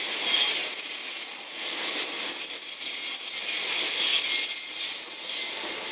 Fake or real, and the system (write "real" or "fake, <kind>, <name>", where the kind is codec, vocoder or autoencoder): real